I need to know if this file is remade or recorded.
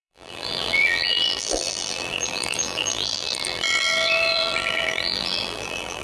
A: remade